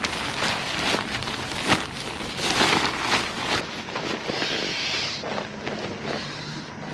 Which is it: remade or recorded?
recorded